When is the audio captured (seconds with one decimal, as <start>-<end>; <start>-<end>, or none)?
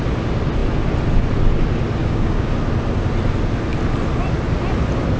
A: 0.0-2.0; 2.5-5.2